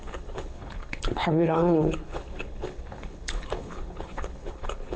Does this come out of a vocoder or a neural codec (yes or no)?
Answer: yes